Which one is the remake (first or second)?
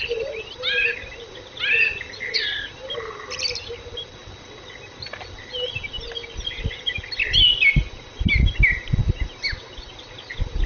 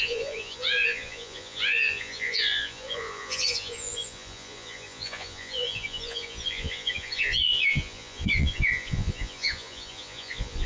second